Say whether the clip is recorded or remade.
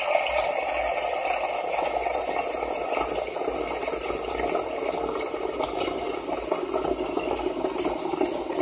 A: recorded